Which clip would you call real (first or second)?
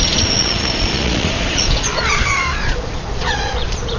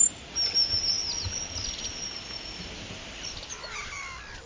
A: second